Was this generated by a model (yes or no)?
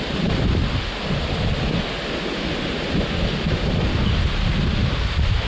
no